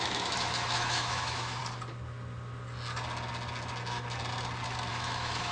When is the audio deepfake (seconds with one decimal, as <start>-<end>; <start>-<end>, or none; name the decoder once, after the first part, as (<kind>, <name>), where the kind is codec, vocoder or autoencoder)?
0.0-1.6 (autoencoder, DAC-VAE); 4.9-5.5